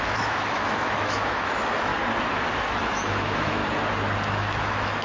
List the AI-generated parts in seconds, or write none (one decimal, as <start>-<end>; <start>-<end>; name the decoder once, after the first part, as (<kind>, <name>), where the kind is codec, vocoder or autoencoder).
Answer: 0.0-1.9 (autoencoder, DAC-VAE); 2.6-3.6; 4.3-5.0